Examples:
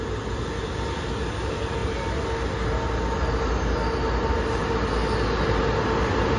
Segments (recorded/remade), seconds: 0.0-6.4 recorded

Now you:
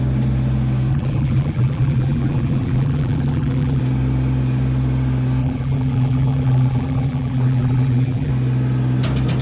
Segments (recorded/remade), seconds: 0.0-0.9 recorded; 0.9-3.8 remade; 3.8-5.4 recorded; 5.4-8.3 remade; 8.3-9.4 recorded

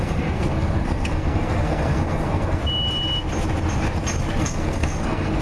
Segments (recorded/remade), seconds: 0.0-2.6 remade; 2.6-4.4 recorded; 4.4-5.4 remade

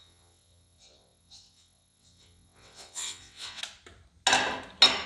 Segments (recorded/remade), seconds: 0.0-3.6 remade; 3.6-5.1 recorded

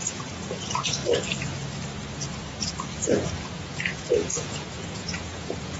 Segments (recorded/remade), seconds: 0.0-1.0 remade; 1.0-3.7 recorded; 3.7-5.8 remade

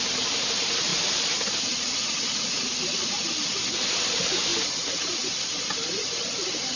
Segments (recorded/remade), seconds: 0.0-6.8 recorded

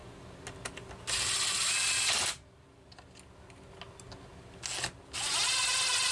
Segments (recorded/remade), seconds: 0.0-6.1 recorded